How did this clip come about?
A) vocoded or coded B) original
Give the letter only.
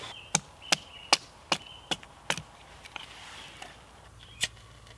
B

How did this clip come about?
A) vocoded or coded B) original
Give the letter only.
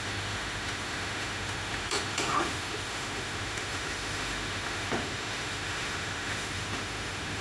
A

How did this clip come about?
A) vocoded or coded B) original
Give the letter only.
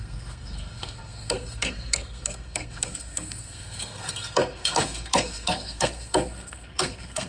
A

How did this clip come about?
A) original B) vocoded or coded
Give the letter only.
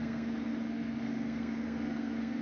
B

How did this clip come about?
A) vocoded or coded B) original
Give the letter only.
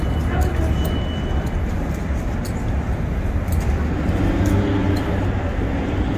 B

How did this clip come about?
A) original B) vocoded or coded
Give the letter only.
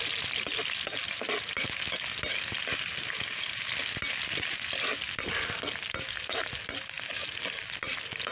A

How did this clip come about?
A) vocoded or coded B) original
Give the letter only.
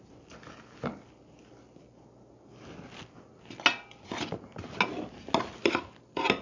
B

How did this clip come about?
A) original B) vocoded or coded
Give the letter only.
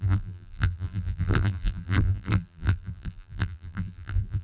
B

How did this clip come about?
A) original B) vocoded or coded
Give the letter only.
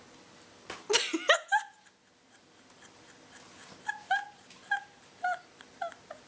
A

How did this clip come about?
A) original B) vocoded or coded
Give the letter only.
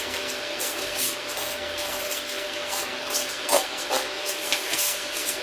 B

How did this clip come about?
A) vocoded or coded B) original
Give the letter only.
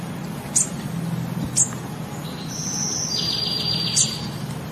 B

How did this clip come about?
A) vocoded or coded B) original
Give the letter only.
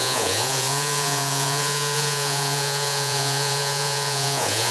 A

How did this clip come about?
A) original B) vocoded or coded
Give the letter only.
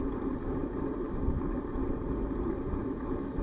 B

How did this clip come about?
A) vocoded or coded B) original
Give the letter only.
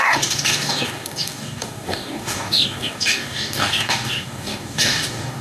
A